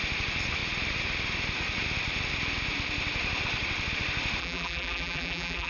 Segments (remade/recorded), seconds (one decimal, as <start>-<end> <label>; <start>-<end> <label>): 0.0-4.4 recorded; 4.4-5.7 remade

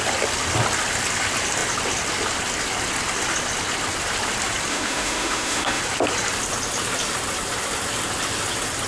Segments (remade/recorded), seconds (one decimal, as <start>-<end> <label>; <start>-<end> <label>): 0.0-4.7 recorded; 4.7-5.8 remade; 5.8-8.9 recorded

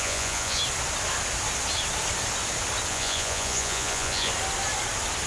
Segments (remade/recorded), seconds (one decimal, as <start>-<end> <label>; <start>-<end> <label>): 0.0-0.6 remade; 0.6-2.9 recorded; 2.9-4.3 remade; 4.3-5.3 recorded

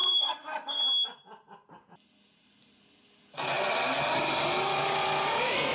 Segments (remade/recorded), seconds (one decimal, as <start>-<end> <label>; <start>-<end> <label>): 0.0-0.8 remade; 0.8-5.7 recorded